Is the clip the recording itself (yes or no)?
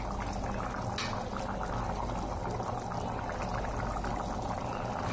yes